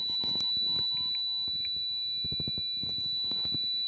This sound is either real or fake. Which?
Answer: real